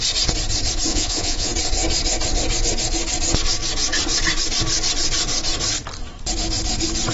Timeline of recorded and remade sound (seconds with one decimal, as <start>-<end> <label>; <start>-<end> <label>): 0.0-0.9 recorded; 0.9-1.5 remade; 1.5-7.1 recorded